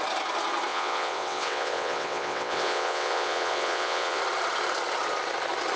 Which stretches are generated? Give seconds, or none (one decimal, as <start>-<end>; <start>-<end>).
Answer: 0.7-4.2